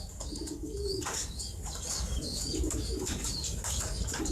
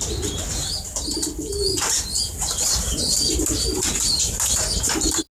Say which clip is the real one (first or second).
second